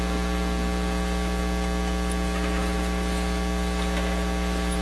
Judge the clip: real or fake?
real